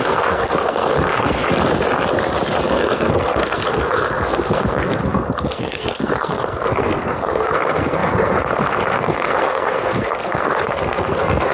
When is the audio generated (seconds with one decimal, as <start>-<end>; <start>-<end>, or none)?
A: 0.0-1.4; 2.6-11.5